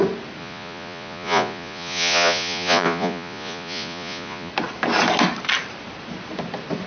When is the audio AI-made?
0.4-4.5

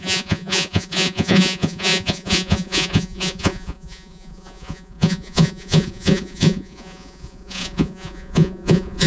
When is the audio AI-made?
0.0-9.1

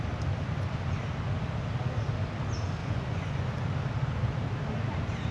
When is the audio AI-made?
2.8-3.5